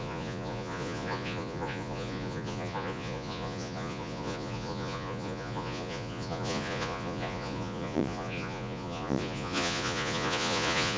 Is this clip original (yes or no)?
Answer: no